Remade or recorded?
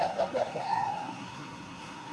remade